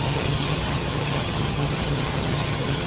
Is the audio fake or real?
fake